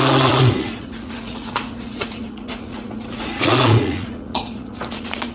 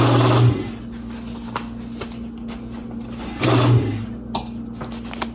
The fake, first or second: first